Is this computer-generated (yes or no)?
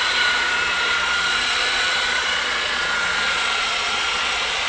yes